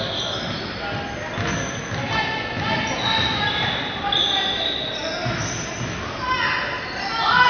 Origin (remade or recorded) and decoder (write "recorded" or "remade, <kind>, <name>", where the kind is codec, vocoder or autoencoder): recorded